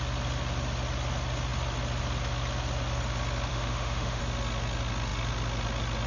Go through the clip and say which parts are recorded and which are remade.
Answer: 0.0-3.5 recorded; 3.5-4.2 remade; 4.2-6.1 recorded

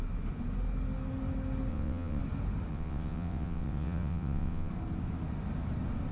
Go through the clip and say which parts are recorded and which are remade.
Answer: 0.0-1.7 recorded; 1.7-2.2 remade; 2.2-2.7 recorded; 2.7-4.7 remade; 4.7-6.1 recorded

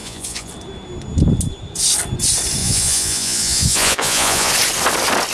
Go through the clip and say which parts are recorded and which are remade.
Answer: 0.0-0.5 remade; 0.5-2.6 recorded; 2.6-4.5 remade; 4.5-5.3 recorded